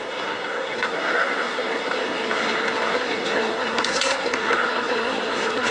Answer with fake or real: fake